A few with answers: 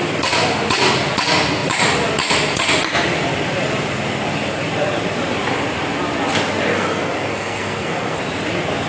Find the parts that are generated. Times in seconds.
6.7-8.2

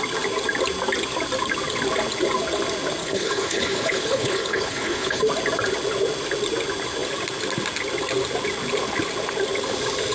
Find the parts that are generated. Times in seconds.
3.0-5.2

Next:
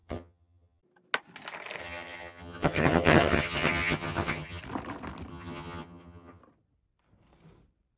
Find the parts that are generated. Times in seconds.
0.0-0.8; 1.8-4.6; 5.3-6.4